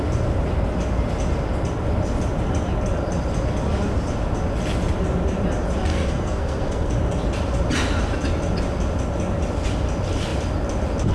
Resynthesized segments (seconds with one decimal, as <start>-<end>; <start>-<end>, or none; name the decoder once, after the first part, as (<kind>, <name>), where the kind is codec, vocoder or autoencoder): 5.9-6.9 (codec, SNAC)